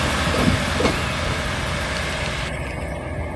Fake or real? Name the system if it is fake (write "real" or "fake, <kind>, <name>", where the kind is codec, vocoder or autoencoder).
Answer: real